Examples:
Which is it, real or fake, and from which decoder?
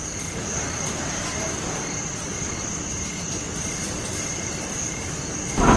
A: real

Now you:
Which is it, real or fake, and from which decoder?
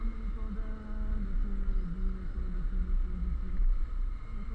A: real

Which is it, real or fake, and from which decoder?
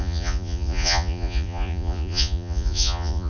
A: fake, vocoder, Vocos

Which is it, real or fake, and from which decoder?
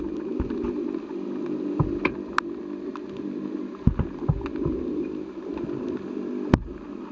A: real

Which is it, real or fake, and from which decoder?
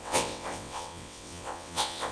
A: fake, vocoder, WaveNeXt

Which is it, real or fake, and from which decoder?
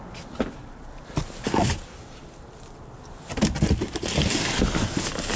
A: real